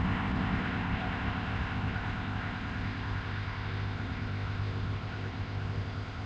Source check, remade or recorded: remade